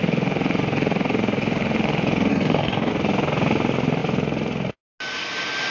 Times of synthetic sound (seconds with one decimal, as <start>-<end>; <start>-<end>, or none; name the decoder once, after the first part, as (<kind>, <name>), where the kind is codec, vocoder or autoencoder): 2.3-2.9 (codec, DAC)